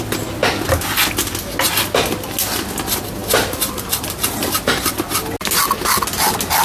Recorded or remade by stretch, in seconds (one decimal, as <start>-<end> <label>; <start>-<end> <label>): 0.0-3.2 recorded; 3.2-4.9 remade; 4.9-6.6 recorded